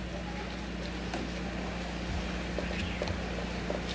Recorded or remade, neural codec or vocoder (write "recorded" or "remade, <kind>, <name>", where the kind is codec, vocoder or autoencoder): recorded